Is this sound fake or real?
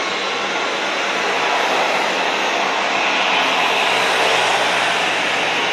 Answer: real